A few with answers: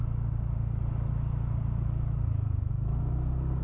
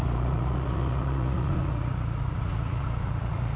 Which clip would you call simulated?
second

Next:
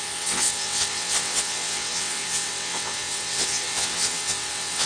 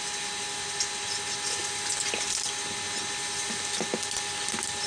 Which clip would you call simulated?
first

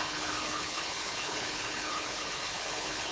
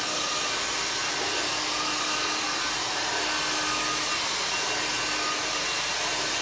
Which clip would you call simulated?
first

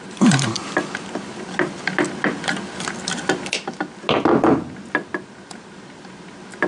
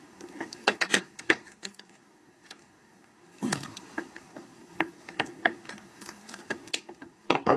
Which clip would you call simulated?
second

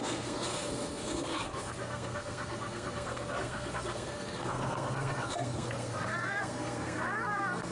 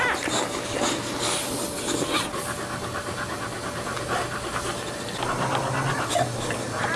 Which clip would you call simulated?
first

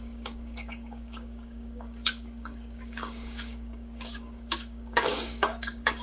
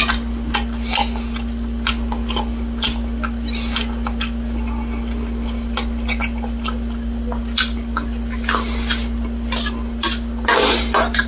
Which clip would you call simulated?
first